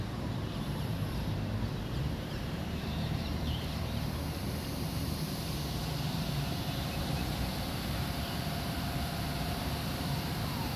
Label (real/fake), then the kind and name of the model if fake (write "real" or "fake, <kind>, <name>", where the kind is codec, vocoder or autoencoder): fake, vocoder, BigVGAN v2